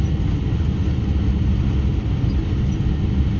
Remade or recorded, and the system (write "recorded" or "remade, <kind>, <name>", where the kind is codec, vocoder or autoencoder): recorded